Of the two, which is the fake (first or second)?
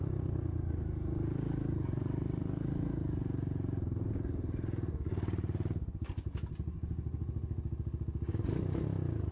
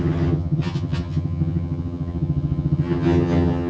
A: second